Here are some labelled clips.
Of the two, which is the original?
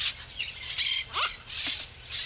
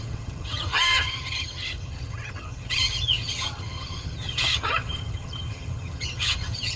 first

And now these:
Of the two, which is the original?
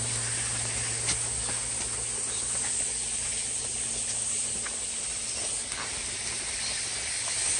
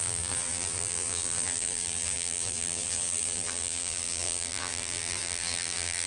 first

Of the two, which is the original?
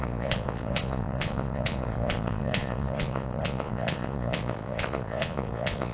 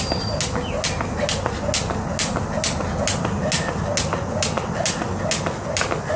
second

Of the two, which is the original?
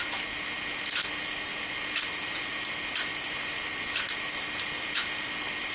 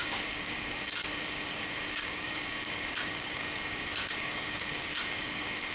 first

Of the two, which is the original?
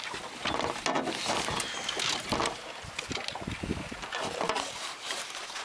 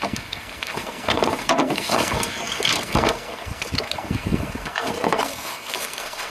first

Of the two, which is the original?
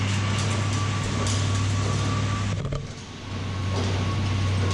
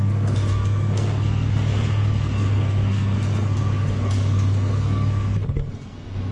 first